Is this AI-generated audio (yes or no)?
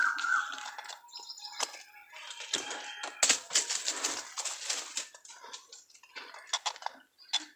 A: no